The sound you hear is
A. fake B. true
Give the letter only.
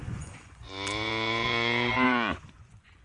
A